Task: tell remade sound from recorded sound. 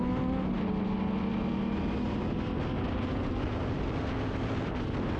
recorded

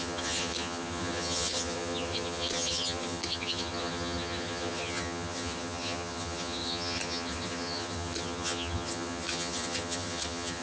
remade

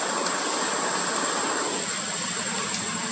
recorded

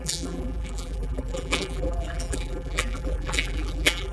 remade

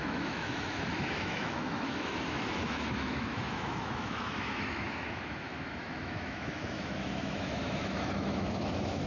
remade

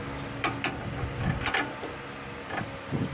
recorded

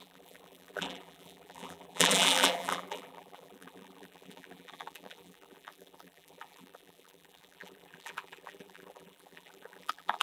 remade